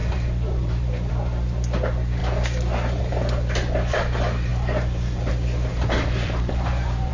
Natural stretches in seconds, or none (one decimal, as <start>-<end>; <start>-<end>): 1.1-4.5; 5.3-5.7